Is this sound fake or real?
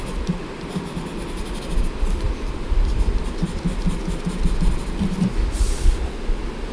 real